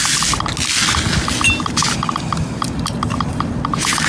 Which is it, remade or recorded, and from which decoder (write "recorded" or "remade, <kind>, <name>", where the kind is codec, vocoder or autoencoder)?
recorded